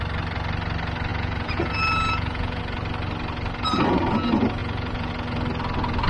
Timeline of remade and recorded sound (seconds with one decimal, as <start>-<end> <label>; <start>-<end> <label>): 0.0-1.1 recorded; 1.1-2.6 remade; 2.6-4.6 recorded; 4.6-5.1 remade; 5.1-6.1 recorded